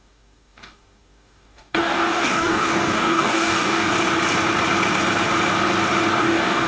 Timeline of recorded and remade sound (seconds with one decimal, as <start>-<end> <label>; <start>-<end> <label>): 0.0-3.9 remade; 3.9-6.2 recorded; 6.2-6.7 remade